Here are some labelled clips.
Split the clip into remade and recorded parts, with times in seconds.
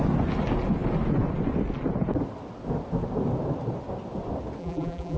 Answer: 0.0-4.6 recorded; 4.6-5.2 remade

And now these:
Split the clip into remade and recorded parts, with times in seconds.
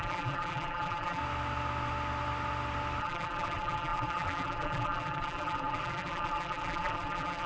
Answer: 0.0-1.2 remade; 1.2-3.0 recorded; 3.0-7.5 remade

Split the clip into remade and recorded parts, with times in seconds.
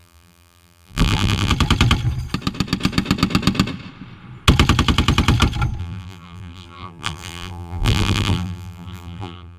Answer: 0.0-1.5 remade; 1.5-5.8 recorded; 5.8-9.6 remade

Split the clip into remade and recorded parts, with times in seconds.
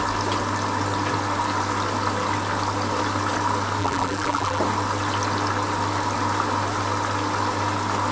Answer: 0.0-3.8 recorded; 3.8-4.6 remade; 4.6-8.1 recorded